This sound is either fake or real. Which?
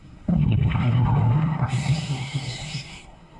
fake